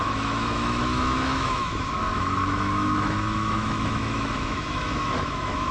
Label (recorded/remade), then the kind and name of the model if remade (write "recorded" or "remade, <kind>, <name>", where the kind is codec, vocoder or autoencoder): remade, autoencoder, DAC-VAE